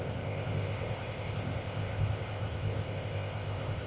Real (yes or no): no